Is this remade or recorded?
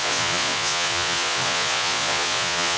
remade